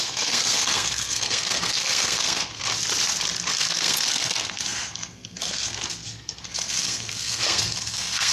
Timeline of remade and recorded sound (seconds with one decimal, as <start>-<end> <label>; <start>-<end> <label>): 0.0-2.6 remade; 2.6-3.5 recorded; 3.5-8.3 remade